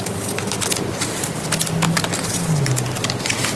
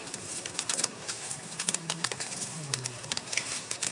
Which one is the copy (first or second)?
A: second